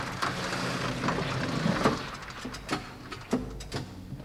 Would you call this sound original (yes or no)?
yes